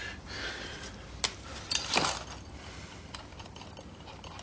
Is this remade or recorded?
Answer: recorded